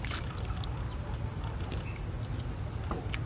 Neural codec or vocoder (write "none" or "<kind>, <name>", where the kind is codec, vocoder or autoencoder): none